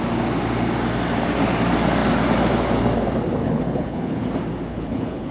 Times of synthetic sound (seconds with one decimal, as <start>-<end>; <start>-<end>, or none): 3.4-4.2; 4.7-5.3